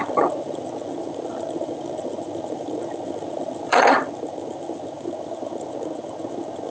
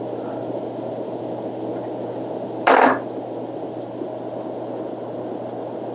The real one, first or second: second